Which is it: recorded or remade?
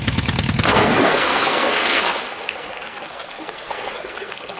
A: remade